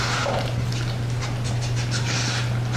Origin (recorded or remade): recorded